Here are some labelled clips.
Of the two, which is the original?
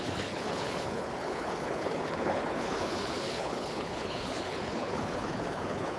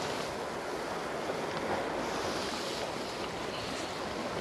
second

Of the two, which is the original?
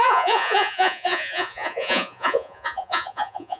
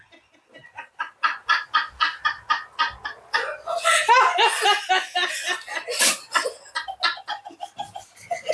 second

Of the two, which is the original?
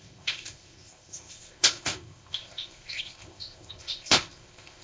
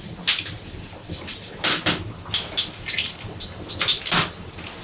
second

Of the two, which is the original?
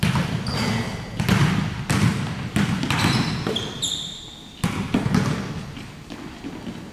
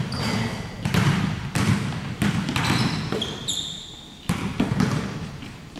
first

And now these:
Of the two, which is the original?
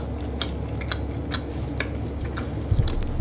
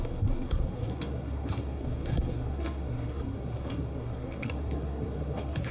first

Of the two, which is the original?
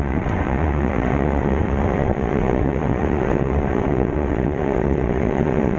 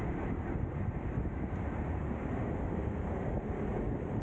second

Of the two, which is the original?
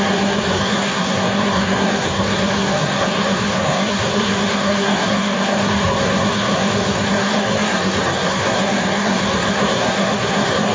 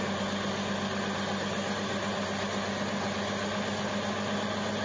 second